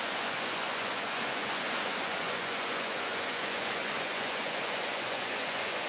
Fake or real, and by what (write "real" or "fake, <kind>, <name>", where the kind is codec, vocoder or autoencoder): fake, vocoder, Vocos